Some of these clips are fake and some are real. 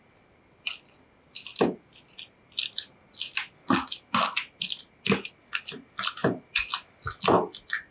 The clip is real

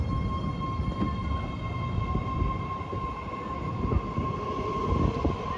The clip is real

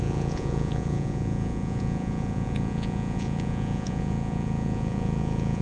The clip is fake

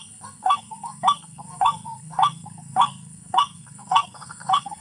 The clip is fake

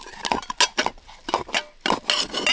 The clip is real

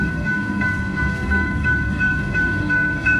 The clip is fake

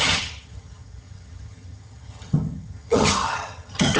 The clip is fake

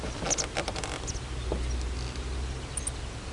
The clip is real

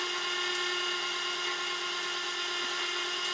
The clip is real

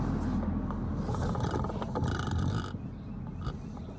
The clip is real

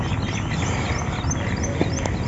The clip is real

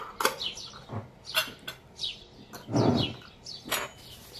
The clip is real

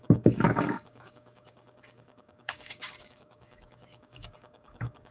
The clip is fake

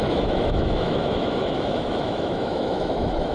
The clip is fake